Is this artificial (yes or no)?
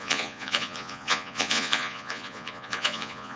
yes